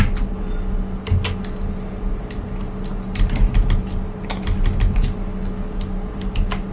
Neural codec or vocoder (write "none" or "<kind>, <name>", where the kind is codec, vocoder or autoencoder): none